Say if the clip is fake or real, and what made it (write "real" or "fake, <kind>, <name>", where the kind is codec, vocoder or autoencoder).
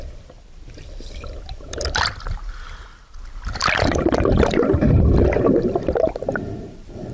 fake, vocoder, BigVGAN v2